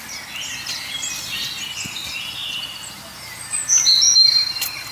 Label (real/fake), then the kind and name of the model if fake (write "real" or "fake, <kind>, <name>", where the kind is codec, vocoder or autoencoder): real